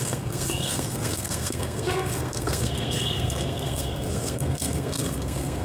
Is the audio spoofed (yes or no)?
yes